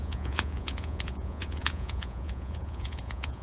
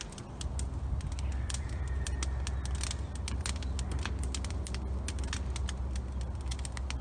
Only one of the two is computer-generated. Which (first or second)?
first